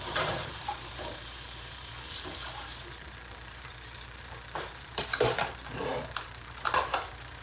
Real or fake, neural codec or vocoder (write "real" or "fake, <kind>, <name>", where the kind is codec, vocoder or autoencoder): fake, vocoder, BigVGAN v2